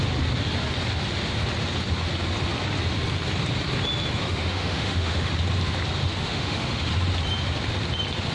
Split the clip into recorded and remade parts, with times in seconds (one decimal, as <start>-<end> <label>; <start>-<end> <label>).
0.0-4.2 recorded; 4.2-5.3 remade; 5.3-6.0 recorded; 6.0-6.9 remade; 6.9-8.3 recorded